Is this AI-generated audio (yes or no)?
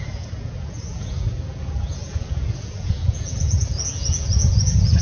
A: yes